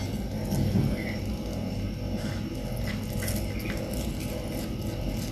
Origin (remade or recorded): recorded